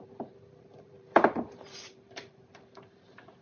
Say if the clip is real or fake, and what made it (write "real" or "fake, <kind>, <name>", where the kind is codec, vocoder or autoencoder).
fake, vocoder, BigVGAN v2